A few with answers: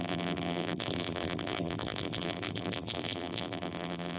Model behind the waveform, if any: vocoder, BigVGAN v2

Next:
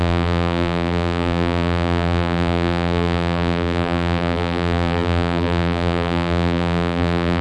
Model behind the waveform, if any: vocoder, BigVGAN v2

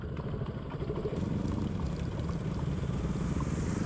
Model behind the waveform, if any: vocoder, BigVGAN v2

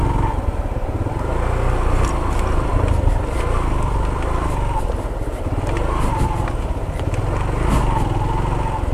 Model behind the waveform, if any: none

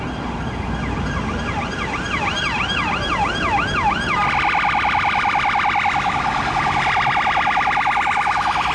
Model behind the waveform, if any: none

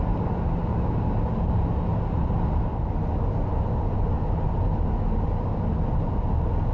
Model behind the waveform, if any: none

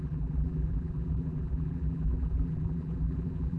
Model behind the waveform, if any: vocoder, BigVGAN v2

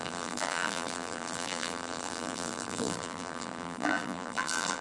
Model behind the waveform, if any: vocoder, BigVGAN v2